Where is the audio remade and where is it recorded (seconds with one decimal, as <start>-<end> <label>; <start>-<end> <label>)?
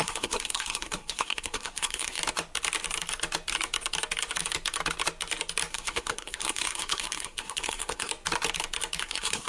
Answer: 0.0-2.2 remade; 2.2-5.7 recorded; 5.7-8.1 remade; 8.1-9.0 recorded; 9.0-9.5 remade